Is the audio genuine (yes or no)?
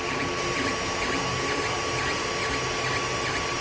yes